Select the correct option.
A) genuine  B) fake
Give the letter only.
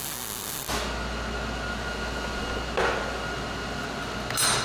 A